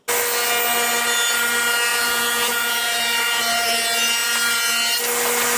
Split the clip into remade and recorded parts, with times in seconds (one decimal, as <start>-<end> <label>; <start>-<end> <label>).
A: 0.0-1.9 recorded; 1.9-3.4 remade; 3.4-5.6 recorded